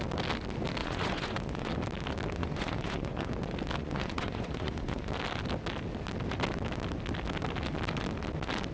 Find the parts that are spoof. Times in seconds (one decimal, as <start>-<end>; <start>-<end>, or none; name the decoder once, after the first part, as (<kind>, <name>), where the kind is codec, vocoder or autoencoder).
0.8-1.7 (vocoder, Vocos); 2.4-3.3; 3.8-5.1